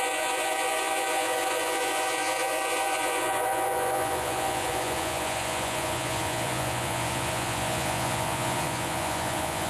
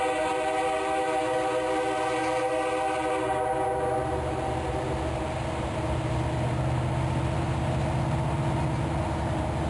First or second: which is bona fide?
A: second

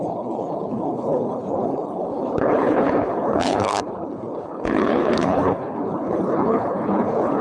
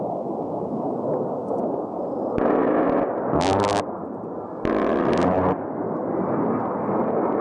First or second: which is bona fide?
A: second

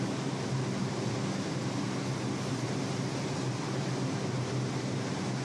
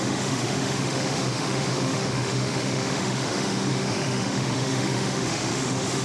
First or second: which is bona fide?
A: first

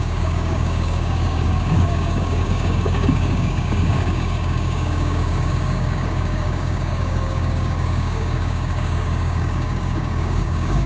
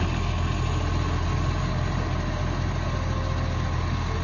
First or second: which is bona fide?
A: second